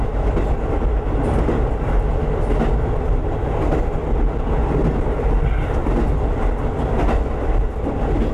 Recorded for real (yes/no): yes